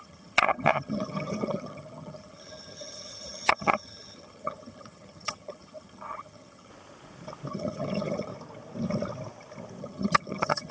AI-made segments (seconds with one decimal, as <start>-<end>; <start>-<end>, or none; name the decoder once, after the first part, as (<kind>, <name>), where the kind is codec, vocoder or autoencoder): 0.0-6.7 (vocoder, HiFi-GAN); 7.5-8.3; 9.8-10.7